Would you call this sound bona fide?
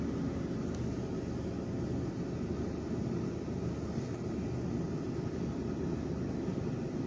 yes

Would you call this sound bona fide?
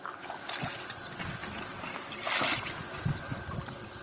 yes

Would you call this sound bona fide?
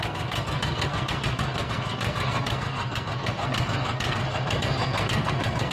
no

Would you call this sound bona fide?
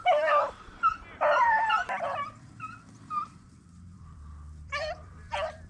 no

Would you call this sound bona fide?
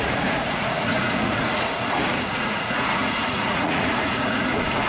no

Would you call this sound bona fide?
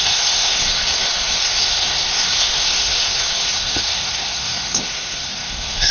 no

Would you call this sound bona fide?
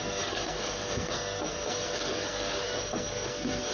no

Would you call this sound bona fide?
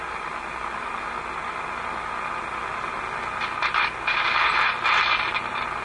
yes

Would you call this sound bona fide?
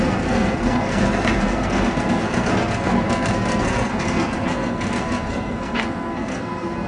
no